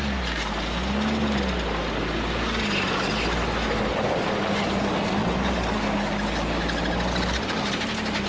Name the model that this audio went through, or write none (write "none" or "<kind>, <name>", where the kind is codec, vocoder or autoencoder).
none